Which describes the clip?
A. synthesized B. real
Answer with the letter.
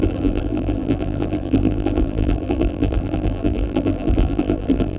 A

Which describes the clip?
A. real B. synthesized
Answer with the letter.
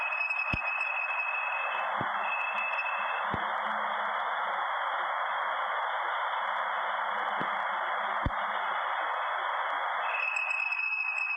A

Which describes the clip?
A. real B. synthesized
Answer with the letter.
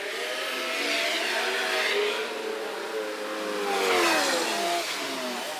A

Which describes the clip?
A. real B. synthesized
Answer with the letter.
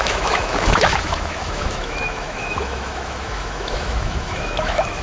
B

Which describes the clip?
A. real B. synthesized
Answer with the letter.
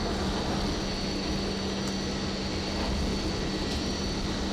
A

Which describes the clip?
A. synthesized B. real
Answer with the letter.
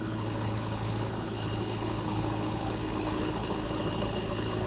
A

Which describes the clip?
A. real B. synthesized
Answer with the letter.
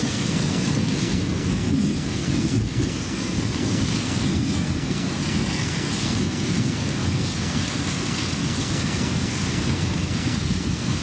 B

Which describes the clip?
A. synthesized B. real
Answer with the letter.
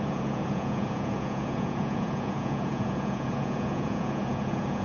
A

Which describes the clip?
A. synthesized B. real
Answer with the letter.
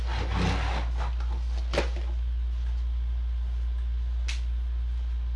B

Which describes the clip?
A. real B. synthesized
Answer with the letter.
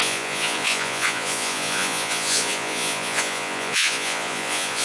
B